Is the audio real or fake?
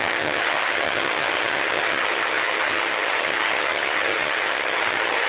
fake